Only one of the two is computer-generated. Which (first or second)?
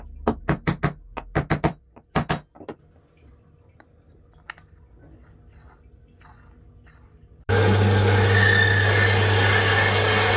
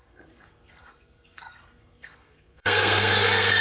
second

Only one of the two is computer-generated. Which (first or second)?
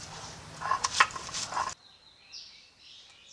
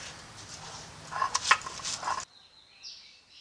first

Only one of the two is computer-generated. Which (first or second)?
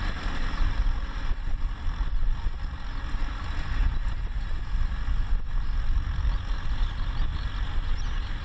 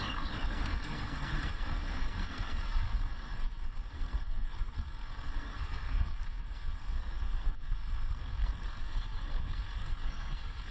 second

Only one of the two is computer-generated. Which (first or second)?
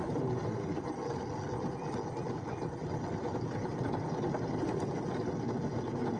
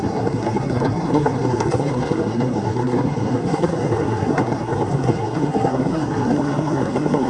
second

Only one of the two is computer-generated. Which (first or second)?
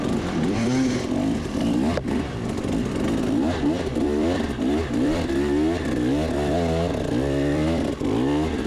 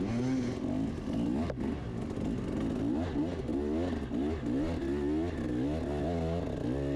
first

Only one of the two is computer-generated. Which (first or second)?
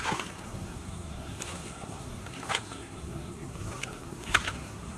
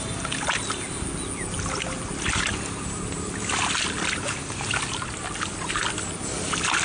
first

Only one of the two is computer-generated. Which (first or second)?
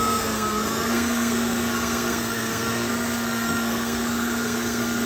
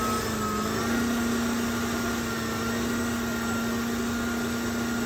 first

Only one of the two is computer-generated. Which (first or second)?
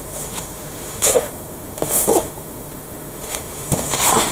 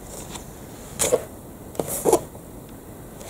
first